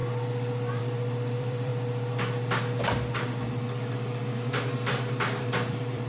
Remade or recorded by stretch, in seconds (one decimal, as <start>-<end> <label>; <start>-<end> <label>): 0.0-0.8 recorded; 0.8-1.7 remade; 1.7-5.4 recorded; 5.4-6.1 remade